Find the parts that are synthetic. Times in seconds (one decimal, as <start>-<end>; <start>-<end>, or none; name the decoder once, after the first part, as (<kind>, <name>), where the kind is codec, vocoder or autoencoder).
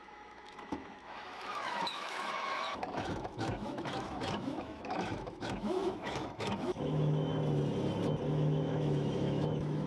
0.0-7.3 (autoencoder, DAC-VAE); 8.3-9.9